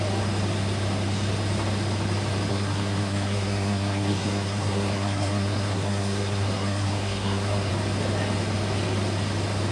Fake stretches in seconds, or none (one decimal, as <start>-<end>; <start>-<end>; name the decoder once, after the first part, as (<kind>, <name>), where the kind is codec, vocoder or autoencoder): 2.5-7.7 (codec, SNAC)